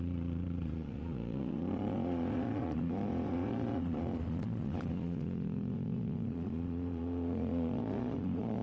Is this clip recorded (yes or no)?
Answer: no